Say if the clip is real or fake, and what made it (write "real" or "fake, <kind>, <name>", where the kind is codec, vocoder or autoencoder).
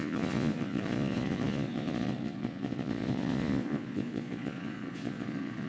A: fake, vocoder, Vocos